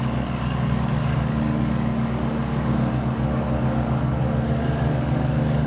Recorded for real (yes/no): no